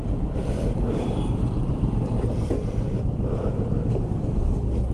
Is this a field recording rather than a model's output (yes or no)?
no